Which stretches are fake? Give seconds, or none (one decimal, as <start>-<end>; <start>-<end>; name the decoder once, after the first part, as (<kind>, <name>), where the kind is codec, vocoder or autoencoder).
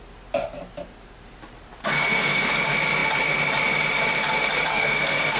1.8-2.5 (codec, SNAC); 4.7-5.4